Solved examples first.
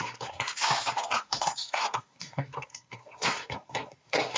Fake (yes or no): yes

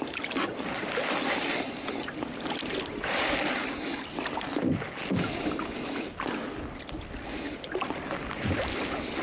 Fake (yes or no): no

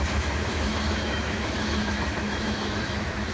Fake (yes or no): yes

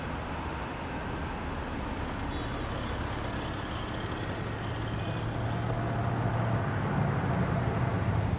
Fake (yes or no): no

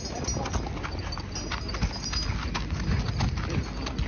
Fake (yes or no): no